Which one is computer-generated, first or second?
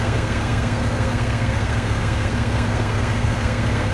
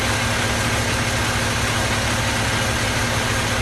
first